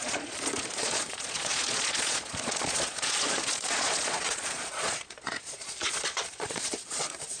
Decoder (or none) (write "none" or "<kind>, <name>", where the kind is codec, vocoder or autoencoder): vocoder, Vocos